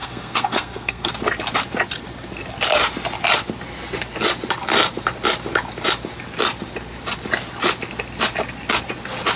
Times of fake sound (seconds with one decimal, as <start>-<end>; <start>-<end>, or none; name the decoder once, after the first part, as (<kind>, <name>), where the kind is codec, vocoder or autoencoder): 0.0-1.1 (codec, SNAC)